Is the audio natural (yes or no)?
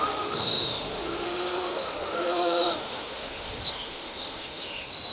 no